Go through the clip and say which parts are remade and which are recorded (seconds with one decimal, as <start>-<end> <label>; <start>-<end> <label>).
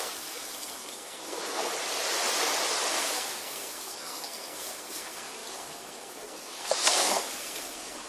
0.0-1.7 remade; 1.7-2.9 recorded; 2.9-8.1 remade